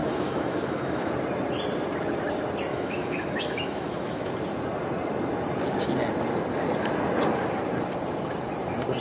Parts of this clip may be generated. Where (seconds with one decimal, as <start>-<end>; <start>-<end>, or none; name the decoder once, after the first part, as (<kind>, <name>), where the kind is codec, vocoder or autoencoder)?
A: 0.0-1.1 (autoencoder, DAC-VAE); 2.7-4.3